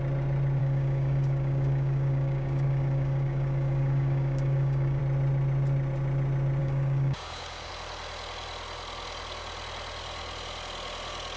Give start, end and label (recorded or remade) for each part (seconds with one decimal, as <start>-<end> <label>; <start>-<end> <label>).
0.0-0.6 recorded; 0.6-5.0 remade; 5.0-6.6 recorded; 6.6-7.7 remade; 7.7-11.4 recorded

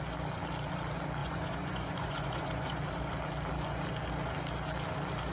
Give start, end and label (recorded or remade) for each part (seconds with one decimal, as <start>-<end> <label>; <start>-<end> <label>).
0.0-1.2 recorded; 1.2-2.8 remade; 2.8-5.3 recorded